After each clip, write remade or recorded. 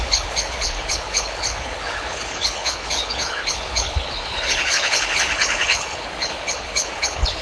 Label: remade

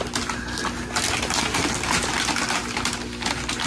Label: recorded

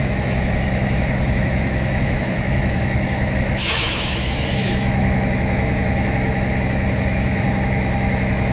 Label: remade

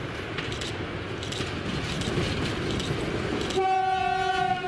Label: recorded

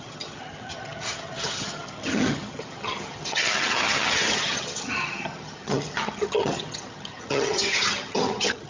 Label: remade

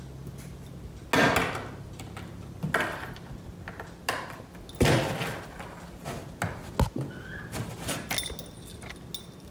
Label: recorded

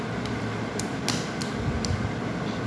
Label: recorded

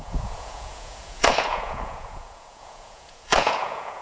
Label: remade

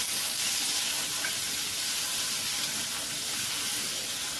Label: recorded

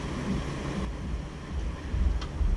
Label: recorded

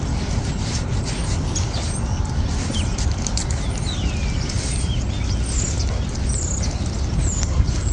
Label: recorded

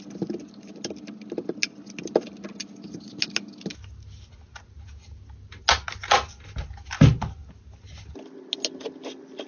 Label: recorded